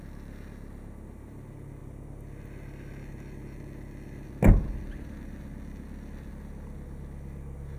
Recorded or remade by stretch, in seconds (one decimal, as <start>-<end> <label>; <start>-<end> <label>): 0.0-7.8 recorded